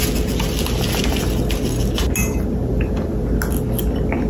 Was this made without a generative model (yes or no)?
yes